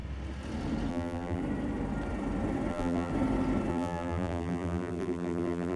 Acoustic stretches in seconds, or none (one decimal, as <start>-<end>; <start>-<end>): 0.0-0.9; 1.4-2.7; 3.1-3.7